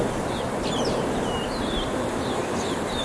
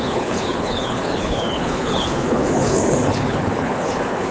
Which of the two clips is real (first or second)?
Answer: first